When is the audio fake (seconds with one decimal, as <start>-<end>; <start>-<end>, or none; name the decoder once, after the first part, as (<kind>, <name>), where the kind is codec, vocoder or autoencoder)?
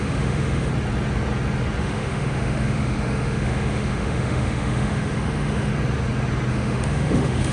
0.0-0.7 (autoencoder, DAC-VAE); 1.8-5.7; 6.5-7.5